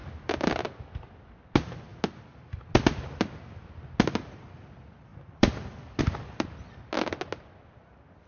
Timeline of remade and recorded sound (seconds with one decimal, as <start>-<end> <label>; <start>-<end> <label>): 0.0-1.3 remade; 1.3-5.1 recorded; 5.1-6.0 remade; 6.0-8.3 recorded